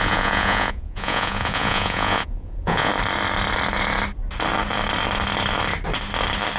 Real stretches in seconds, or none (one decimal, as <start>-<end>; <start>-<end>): 2.9-6.6